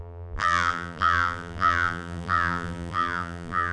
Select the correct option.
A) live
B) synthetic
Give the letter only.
B